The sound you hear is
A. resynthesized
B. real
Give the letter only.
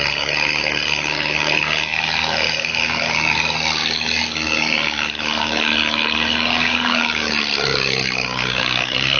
A